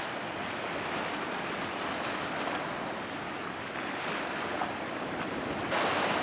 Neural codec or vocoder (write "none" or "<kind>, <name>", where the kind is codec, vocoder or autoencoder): none